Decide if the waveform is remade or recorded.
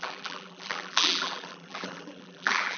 remade